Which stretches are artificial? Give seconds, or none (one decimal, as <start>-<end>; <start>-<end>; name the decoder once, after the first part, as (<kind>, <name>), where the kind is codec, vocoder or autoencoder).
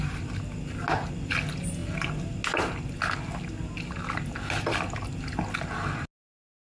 none